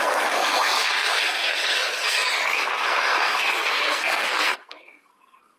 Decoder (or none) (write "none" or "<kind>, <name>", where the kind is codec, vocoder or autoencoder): codec, SNAC